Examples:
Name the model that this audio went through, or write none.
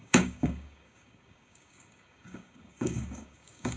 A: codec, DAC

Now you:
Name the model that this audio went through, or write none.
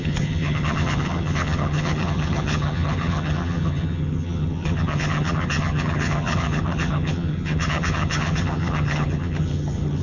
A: vocoder, HiFi-GAN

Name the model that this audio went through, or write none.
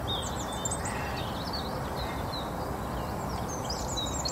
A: none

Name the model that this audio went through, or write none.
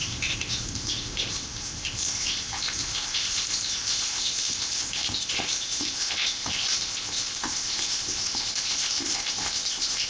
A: codec, ZipCodec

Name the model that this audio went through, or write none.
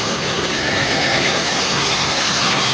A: codec, SNAC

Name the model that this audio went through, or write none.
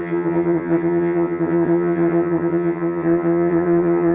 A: vocoder, HiFi-GAN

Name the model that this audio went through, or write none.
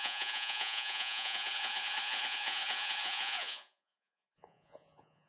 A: vocoder, Vocos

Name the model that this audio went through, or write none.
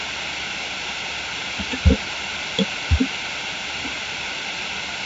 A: none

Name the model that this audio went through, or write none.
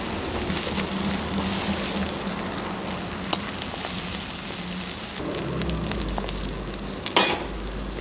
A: none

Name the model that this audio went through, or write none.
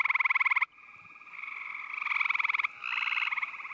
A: none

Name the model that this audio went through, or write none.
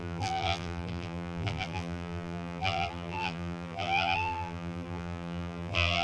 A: vocoder, BigVGAN v2